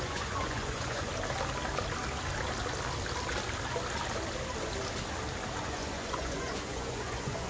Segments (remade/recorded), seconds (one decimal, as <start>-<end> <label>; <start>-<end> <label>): 0.0-1.1 remade; 1.1-5.6 recorded; 5.6-7.5 remade